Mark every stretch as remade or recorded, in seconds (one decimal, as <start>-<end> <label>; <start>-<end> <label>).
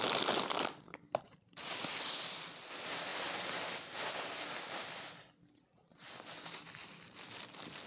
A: 0.0-7.9 recorded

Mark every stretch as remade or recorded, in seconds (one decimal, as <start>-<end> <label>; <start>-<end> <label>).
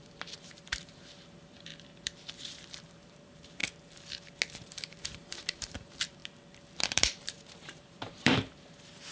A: 0.0-1.7 remade; 1.7-2.6 recorded; 2.6-3.6 remade; 3.6-4.6 recorded; 4.6-6.2 remade; 6.2-6.8 recorded; 6.8-9.1 remade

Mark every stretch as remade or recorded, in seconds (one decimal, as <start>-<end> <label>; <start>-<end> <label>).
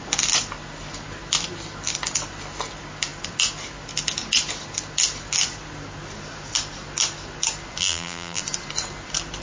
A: 0.0-7.8 recorded; 7.8-8.4 remade; 8.4-9.4 recorded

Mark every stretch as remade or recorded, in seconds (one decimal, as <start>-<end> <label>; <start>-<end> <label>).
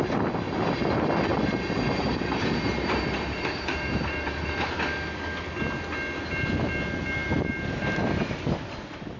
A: 0.0-1.3 recorded; 1.3-4.7 remade; 4.7-9.2 recorded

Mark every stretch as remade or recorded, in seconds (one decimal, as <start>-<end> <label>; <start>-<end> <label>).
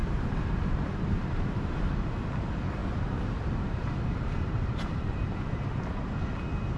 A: 0.0-1.8 remade; 1.8-2.8 recorded; 2.8-5.9 remade; 5.9-6.8 recorded